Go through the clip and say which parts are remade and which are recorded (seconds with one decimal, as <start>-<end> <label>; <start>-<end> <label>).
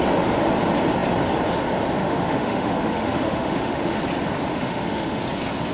0.0-2.0 recorded; 2.0-4.0 remade; 4.0-4.5 recorded; 4.5-5.2 remade; 5.2-5.7 recorded